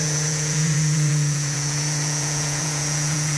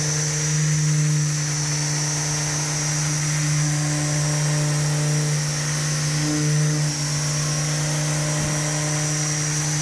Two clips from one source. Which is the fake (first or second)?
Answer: first